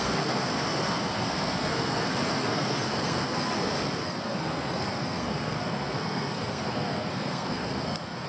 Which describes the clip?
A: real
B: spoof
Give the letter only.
B